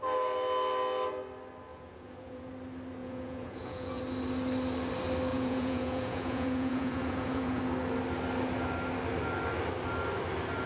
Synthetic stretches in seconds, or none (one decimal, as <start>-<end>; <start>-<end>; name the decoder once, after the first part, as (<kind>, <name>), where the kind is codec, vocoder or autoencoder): 1.7-2.5 (vocoder, Vocos); 3.0-4.0; 5.3-7.6